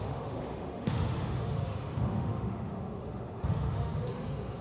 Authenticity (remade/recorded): remade